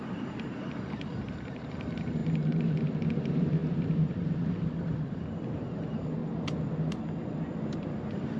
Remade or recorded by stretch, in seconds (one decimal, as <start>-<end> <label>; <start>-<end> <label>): 0.0-2.2 remade; 2.2-3.2 recorded; 3.2-6.2 remade; 6.2-7.7 recorded; 7.7-8.4 remade